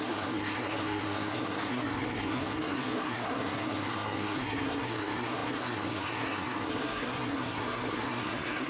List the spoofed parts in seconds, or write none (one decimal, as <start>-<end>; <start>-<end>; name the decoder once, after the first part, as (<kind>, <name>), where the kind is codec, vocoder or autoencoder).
0.0-8.7 (codec, SNAC)